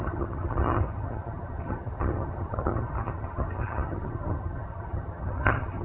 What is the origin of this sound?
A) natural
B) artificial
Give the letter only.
B